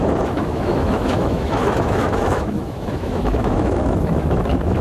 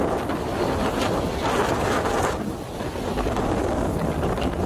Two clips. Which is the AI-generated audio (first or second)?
first